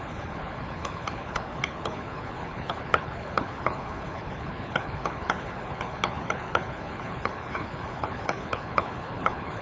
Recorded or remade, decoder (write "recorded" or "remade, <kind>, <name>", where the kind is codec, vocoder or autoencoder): remade, codec, HILCodec